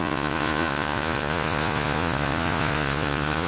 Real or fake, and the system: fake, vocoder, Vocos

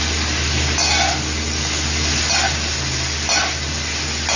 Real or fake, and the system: real